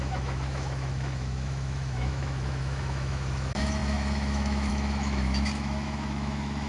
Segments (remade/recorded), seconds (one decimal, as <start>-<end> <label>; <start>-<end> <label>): 0.0-6.7 remade